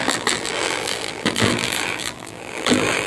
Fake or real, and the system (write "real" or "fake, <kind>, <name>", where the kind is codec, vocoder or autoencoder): fake, vocoder, BigVGAN v2